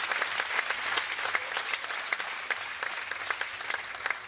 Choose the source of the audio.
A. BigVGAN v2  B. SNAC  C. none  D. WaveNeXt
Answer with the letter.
C